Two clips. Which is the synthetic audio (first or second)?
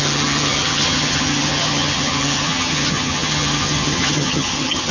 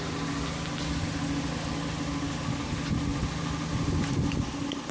first